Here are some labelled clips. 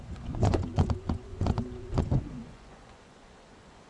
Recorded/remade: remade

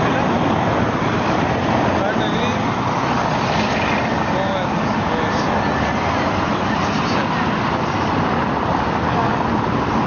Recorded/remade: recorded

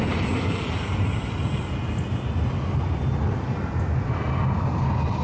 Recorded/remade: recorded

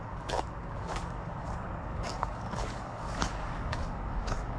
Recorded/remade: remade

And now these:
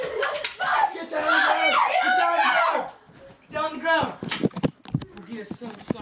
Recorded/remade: recorded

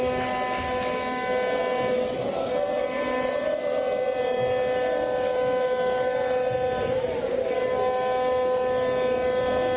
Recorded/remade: recorded